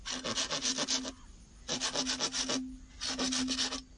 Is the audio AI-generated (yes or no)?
no